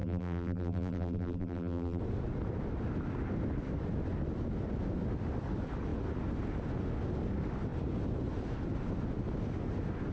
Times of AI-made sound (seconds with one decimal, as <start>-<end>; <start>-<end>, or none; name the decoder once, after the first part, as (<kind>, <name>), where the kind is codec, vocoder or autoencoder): 0.0-2.0 (vocoder, BigVGAN v2)